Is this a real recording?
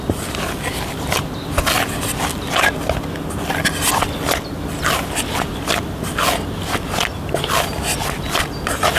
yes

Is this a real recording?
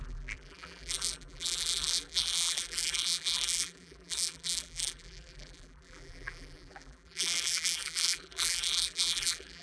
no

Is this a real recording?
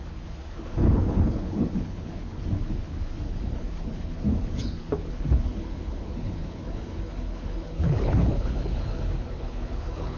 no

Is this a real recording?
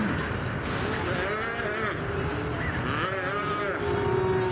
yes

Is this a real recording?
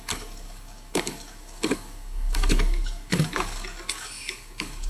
no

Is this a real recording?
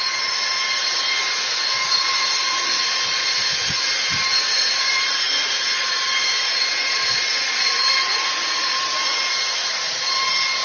no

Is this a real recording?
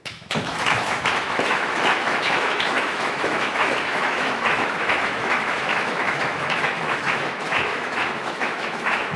no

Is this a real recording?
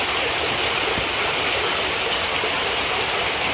yes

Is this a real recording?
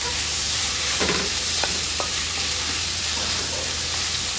no